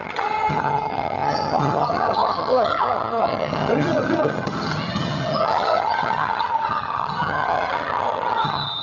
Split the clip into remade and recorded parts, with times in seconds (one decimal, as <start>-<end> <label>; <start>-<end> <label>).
0.0-8.8 remade